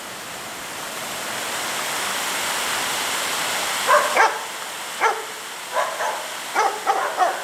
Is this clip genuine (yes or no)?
yes